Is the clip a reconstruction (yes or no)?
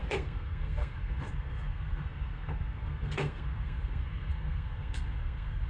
yes